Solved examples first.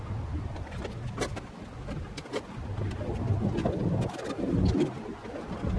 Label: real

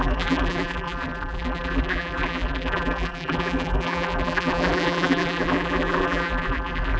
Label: fake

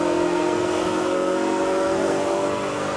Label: fake